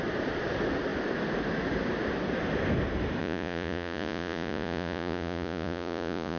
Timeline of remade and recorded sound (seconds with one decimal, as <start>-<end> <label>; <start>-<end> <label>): 0.0-3.2 recorded; 3.2-6.4 remade